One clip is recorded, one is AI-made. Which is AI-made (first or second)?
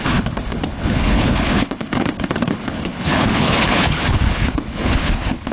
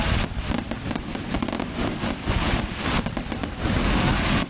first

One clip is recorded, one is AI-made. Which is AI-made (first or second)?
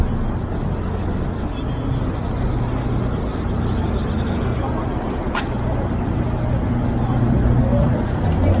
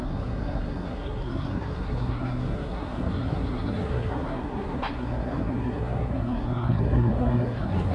second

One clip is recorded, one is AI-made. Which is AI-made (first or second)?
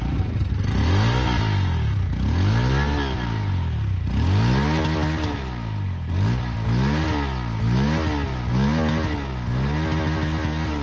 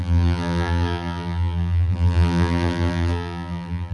second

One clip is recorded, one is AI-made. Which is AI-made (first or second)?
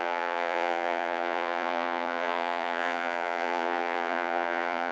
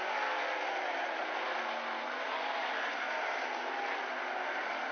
first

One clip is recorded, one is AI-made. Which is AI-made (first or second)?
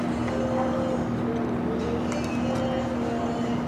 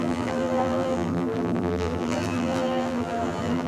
second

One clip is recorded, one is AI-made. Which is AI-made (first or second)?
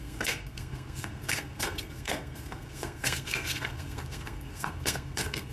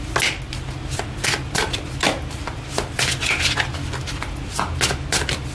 first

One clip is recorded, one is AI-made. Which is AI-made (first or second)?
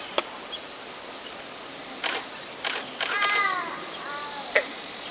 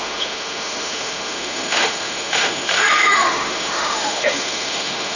second